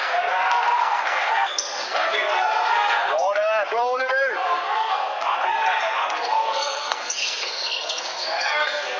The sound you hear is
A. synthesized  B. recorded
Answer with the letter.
A